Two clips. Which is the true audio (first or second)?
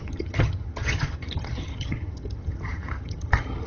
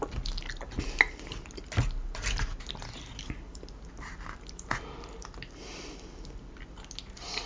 second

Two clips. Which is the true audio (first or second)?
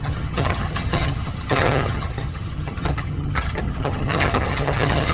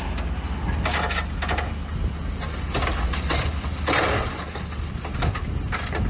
second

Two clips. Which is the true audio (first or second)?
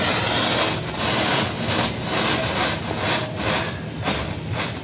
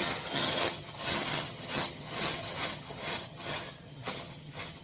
first